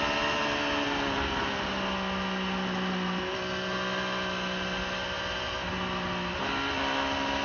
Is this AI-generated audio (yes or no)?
no